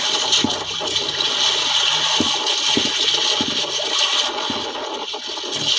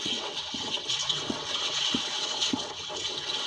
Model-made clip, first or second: second